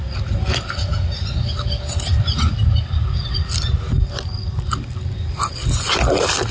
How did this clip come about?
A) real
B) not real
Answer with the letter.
A